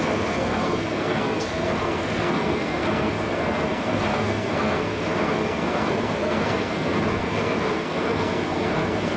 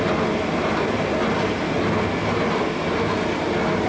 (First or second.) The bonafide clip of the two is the second